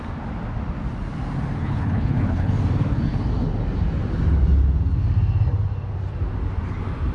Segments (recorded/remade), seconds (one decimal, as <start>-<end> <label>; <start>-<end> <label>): 0.0-1.6 recorded; 1.6-2.5 remade; 2.5-7.1 recorded